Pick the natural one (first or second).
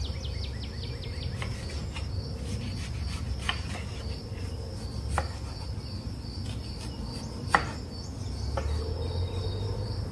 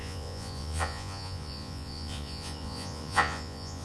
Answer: first